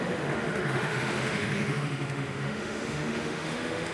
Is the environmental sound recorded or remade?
remade